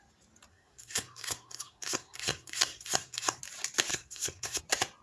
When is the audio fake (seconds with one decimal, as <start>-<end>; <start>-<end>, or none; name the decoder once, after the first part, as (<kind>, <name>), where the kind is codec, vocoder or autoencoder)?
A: 0.5-3.4 (codec, SNAC); 3.9-4.6